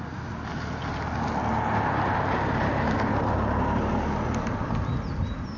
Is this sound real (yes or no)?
yes